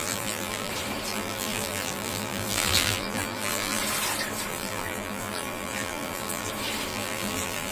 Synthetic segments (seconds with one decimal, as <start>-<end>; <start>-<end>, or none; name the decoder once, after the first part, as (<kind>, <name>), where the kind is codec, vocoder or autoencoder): 0.0-0.7 (vocoder, BigVGAN v2); 1.1-3.8; 4.5-6.5; 6.9-7.7